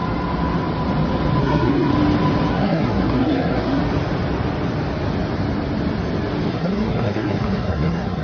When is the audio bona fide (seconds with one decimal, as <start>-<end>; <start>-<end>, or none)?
0.0-1.4; 1.9-2.5; 3.8-6.5